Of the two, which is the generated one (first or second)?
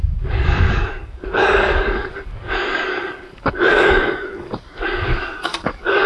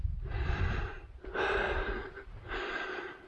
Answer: first